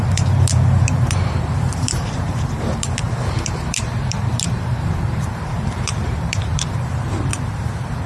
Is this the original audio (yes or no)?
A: no